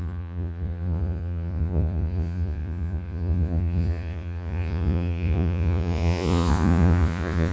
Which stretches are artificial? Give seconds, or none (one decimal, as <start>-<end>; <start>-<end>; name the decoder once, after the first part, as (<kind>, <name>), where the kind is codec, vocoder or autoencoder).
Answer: 0.0-7.5 (vocoder, Vocos)